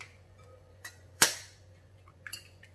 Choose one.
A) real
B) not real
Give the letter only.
B